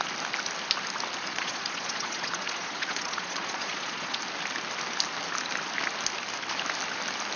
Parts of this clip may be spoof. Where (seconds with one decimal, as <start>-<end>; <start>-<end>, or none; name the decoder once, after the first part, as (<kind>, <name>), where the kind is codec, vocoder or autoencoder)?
1.3-4.2 (vocoder, Vocos)